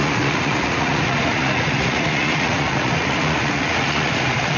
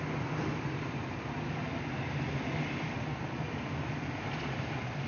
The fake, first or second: first